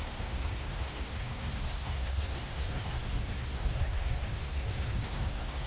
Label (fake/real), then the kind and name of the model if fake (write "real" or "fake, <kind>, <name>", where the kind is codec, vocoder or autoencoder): fake, codec, SNAC